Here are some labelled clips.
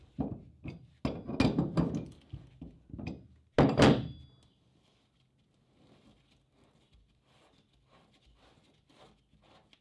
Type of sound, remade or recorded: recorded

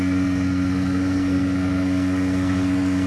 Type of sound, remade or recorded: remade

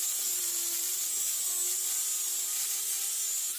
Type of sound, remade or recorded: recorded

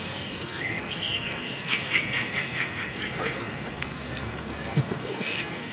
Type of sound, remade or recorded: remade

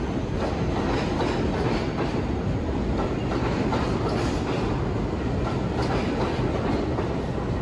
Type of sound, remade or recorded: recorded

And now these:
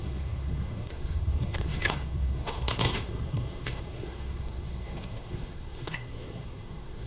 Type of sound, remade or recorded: remade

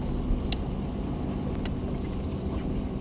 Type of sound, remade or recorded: recorded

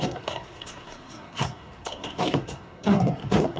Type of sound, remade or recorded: remade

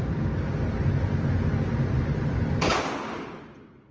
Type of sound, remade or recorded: recorded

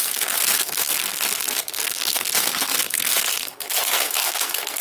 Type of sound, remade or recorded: remade